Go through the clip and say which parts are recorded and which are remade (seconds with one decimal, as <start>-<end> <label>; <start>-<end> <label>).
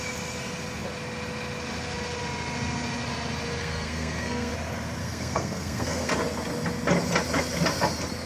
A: 0.0-3.6 recorded; 3.6-4.5 remade; 4.5-5.0 recorded; 5.0-6.1 remade; 6.1-8.3 recorded